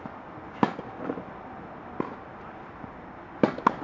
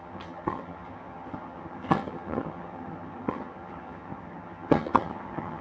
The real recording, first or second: first